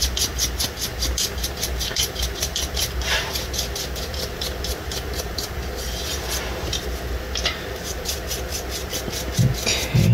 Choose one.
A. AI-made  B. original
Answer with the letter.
B